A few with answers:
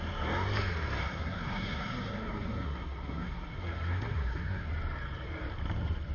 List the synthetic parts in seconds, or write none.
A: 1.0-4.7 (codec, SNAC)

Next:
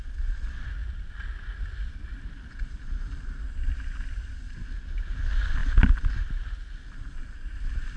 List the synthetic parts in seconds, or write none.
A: none

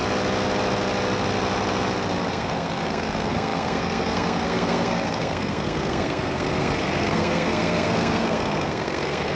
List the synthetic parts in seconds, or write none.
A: 2.3-9.4 (codec, SNAC)

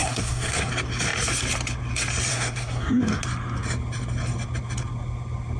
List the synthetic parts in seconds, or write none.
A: 0.0-0.7 (codec, SNAC); 2.3-3.2

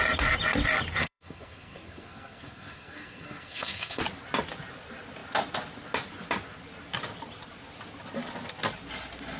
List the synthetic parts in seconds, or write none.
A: 1.0-4.0 (codec, SNAC)

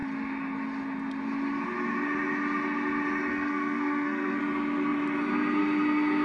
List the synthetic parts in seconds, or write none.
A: 3.3-4.4 (codec, SNAC)

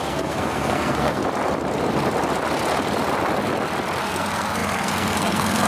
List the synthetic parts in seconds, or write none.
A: 0.0-1.2 (codec, SNAC); 4.0-5.7

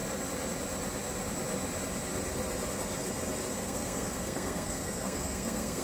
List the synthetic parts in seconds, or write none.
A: 3.5-5.8 (codec, SNAC)